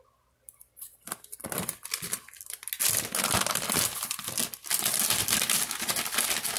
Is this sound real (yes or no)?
yes